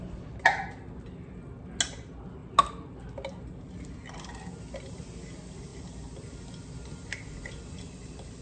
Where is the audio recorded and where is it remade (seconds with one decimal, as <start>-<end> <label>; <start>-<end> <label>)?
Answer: 0.0-8.4 recorded

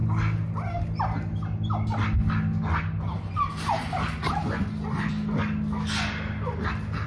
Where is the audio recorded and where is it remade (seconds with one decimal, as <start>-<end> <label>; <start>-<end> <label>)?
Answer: 0.0-7.1 recorded

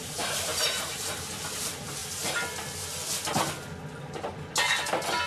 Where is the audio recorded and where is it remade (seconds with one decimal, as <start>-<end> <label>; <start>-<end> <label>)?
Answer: 0.0-2.0 remade; 2.0-5.3 recorded